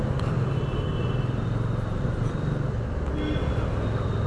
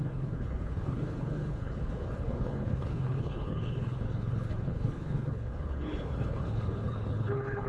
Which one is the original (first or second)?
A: first